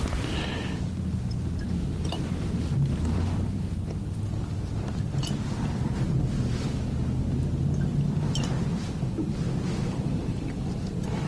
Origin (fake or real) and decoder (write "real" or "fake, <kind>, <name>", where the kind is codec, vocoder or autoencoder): fake, vocoder, BigVGAN v2